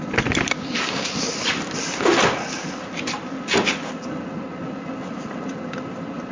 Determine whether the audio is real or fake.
real